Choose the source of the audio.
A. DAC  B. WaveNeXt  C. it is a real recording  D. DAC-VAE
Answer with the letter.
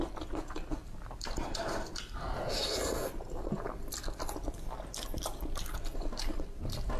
C